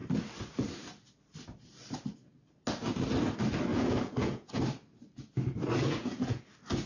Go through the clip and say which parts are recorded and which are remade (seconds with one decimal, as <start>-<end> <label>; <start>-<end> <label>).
0.0-3.7 recorded; 3.7-4.6 remade; 4.6-5.8 recorded; 5.8-6.4 remade; 6.4-6.9 recorded